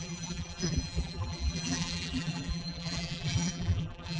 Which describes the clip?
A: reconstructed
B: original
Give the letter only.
A